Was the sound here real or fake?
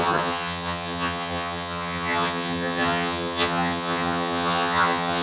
fake